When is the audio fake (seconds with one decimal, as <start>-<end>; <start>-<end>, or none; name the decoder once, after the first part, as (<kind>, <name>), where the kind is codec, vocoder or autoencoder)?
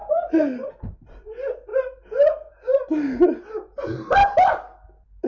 0.0-0.7 (codec, DAC)